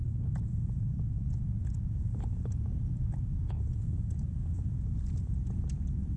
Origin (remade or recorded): remade